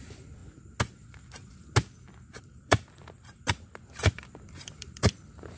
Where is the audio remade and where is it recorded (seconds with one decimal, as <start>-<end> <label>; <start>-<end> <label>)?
0.0-0.4 remade; 0.4-2.4 recorded; 2.4-5.6 remade